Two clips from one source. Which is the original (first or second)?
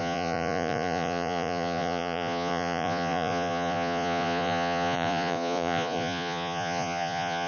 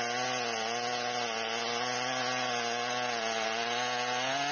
second